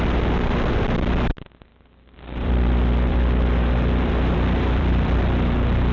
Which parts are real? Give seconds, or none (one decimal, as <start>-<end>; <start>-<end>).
0.0-1.7; 5.2-5.9